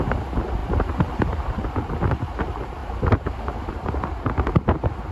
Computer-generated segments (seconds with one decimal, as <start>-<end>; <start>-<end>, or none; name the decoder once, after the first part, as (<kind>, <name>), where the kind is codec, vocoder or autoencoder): none